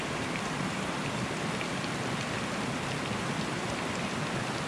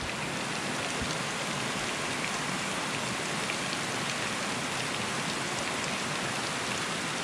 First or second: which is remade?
first